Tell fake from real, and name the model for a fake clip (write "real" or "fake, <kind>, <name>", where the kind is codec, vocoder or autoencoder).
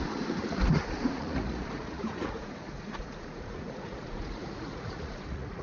fake, vocoder, Vocos